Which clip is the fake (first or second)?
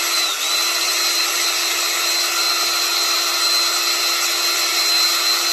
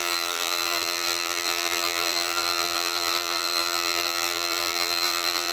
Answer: second